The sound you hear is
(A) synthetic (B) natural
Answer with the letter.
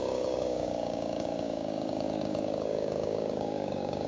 A